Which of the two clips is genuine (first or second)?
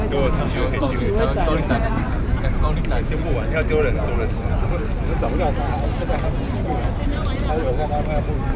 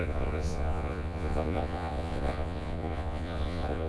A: first